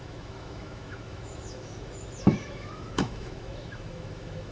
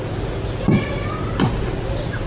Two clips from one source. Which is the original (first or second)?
second